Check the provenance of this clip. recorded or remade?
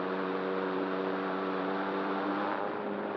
remade